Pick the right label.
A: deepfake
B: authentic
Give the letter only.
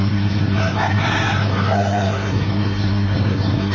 A